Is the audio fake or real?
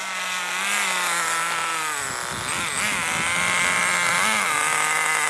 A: real